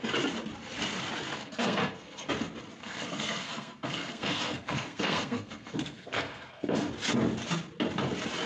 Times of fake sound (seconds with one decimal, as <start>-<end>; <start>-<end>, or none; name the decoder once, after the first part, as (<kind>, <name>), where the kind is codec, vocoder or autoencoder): 1.4-2.3 (codec, SNAC); 2.8-6.9